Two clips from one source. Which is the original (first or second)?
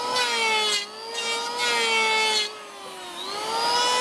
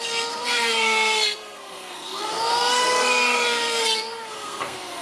first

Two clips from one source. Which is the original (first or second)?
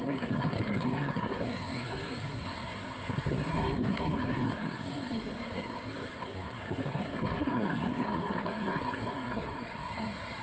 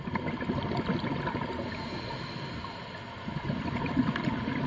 second